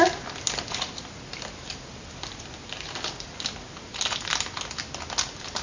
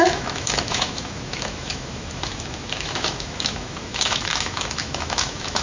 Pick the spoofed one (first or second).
second